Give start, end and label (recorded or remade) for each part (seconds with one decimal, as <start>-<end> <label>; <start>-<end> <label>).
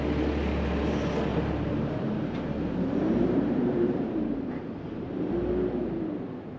0.0-1.3 recorded; 1.3-5.3 remade; 5.3-6.6 recorded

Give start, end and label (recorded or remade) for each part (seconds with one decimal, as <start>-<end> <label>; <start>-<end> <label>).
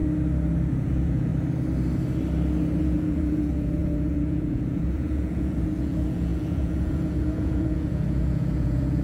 0.0-0.7 recorded; 0.7-1.3 remade; 1.3-2.8 recorded; 2.8-9.0 remade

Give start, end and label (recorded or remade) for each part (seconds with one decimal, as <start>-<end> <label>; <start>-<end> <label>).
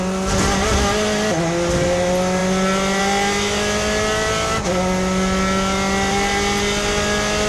0.0-7.5 recorded